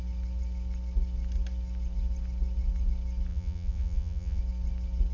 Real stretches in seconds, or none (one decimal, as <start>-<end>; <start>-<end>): 0.0-3.3; 4.4-5.1